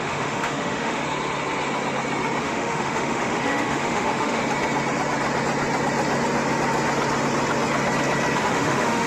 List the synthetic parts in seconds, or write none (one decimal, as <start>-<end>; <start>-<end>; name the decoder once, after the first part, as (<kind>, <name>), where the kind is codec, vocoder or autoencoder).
0.0-1.0 (autoencoder, DAC-VAE); 2.4-4.4; 8.4-9.1